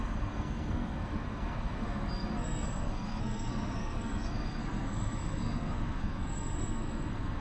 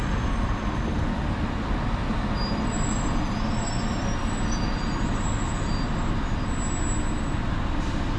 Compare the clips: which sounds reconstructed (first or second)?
first